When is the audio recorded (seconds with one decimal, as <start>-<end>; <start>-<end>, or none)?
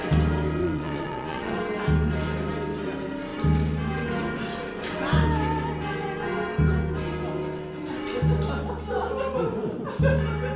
0.0-0.6; 1.6-10.6